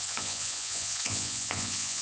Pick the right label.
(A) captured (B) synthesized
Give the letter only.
B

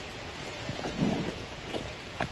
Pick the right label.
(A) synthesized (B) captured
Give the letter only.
A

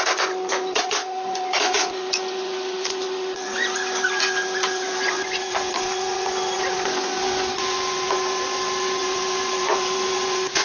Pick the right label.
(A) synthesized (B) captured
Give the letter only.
A